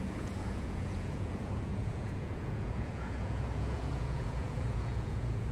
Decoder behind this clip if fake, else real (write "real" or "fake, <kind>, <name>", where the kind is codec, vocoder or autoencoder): fake, vocoder, Vocos